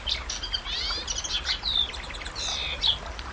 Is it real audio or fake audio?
real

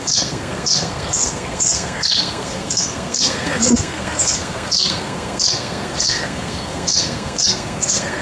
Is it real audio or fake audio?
fake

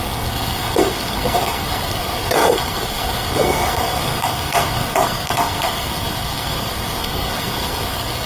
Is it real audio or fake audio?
fake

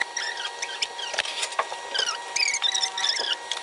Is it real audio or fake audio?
real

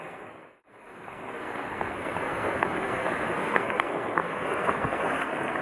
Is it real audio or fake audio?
fake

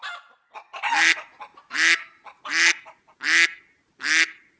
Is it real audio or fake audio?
real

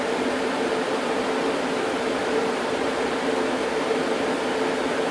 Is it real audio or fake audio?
real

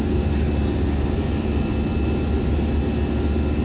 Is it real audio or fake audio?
real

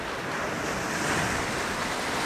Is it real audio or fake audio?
real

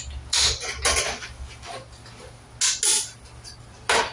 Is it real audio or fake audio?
real